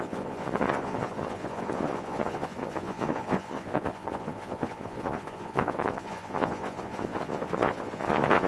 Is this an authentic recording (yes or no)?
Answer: no